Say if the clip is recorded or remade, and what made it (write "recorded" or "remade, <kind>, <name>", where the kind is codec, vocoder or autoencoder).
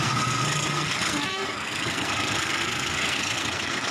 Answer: remade, codec, SNAC